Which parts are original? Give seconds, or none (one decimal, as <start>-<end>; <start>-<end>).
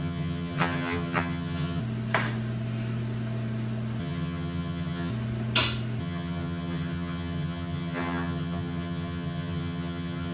1.8-4.0; 5.1-6.0